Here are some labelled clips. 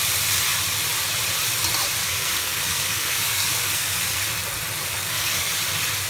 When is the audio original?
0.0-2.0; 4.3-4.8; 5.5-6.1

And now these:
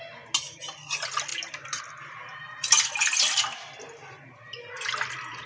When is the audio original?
0.0-5.5